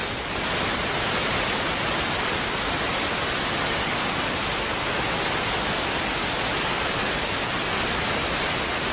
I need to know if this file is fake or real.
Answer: real